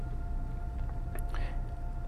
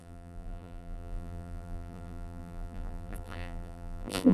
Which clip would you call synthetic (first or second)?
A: second